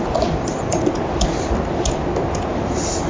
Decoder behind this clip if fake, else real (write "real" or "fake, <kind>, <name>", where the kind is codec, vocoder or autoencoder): real